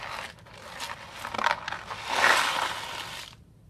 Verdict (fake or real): real